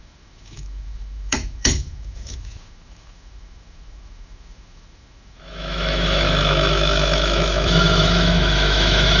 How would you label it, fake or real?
fake